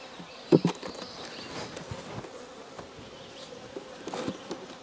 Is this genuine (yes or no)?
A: yes